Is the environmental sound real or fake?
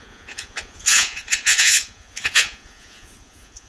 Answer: fake